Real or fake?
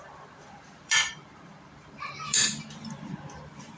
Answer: fake